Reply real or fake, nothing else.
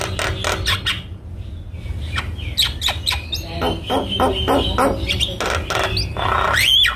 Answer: real